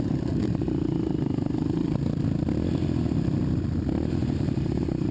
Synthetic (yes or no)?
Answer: yes